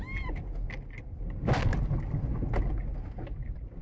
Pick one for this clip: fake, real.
real